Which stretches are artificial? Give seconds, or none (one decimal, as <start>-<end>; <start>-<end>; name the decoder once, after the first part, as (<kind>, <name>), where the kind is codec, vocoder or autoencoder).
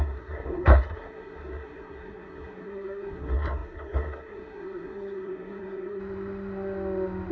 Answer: 0.0-6.0 (codec, SNAC)